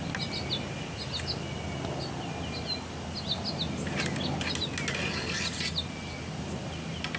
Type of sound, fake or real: real